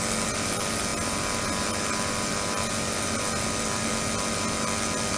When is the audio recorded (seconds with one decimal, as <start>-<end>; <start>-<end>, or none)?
0.0-5.2